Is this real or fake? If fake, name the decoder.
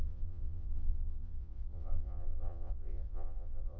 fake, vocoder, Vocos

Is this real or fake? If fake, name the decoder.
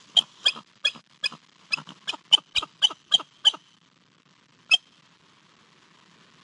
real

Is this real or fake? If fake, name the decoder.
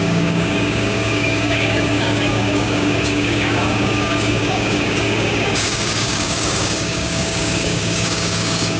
fake, codec, DAC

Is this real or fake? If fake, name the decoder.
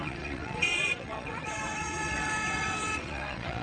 fake, vocoder, WaveNeXt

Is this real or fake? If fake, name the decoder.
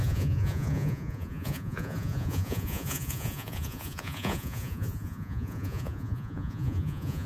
fake, vocoder, Vocos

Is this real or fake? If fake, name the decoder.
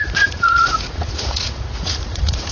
fake, vocoder, Vocos